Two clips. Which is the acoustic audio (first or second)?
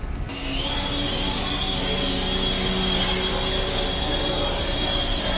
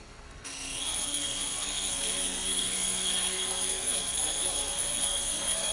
first